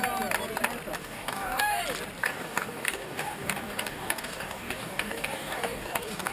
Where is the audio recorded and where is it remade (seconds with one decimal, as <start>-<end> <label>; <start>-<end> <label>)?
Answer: 0.0-1.0 recorded; 1.0-1.8 remade; 1.8-2.2 recorded; 2.2-6.3 remade